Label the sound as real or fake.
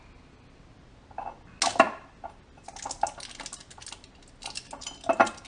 real